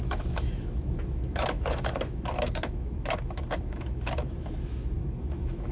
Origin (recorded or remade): remade